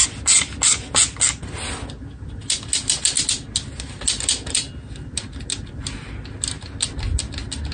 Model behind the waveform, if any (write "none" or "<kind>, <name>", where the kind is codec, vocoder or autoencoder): none